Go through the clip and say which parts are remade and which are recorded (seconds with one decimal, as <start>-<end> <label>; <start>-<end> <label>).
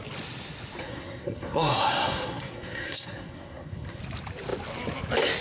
0.0-0.8 recorded; 0.8-4.0 remade; 4.0-5.4 recorded